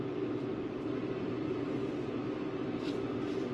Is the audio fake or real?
real